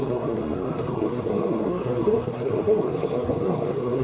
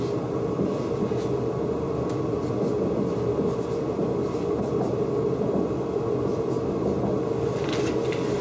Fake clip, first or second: first